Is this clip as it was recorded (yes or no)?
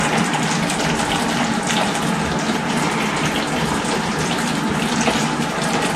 yes